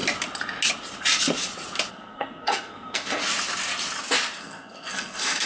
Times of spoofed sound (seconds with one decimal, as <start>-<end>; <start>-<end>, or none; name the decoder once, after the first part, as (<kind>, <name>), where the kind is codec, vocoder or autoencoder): 1.9-3.2 (codec, SNAC); 4.4-5.5